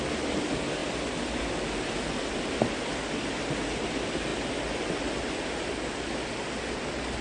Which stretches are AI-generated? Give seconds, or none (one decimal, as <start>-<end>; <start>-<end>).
none